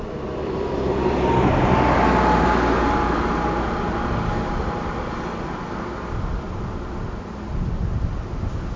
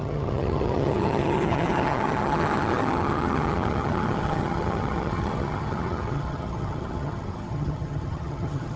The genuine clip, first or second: first